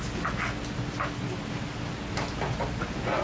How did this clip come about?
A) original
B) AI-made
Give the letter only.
A